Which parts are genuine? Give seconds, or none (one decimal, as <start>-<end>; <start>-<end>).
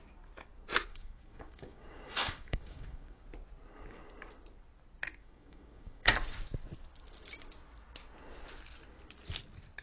0.0-0.9; 3.2-5.2; 6.1-9.8